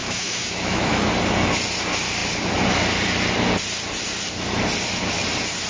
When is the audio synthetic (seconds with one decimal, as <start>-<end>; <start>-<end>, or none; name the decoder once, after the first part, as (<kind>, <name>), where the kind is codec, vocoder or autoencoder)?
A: 0.0-1.1 (autoencoder, DAC-VAE)